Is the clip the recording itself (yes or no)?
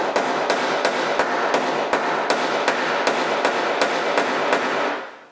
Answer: yes